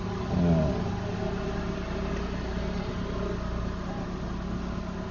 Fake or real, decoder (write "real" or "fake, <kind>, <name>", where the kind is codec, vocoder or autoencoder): real